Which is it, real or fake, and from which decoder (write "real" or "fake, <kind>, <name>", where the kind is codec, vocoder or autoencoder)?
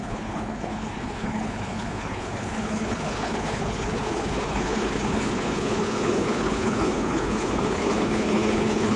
fake, codec, HILCodec